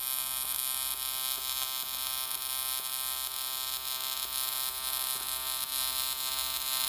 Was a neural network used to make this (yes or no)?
no